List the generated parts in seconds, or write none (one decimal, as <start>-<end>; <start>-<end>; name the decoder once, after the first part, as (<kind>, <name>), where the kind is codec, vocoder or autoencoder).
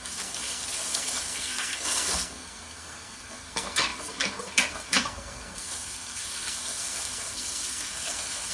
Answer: 0.0-8.5 (codec, SNAC)